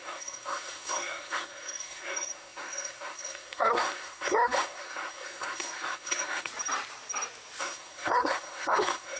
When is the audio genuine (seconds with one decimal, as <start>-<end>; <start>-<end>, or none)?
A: 6.5-7.6